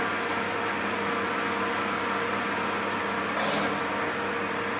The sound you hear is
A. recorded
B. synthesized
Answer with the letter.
A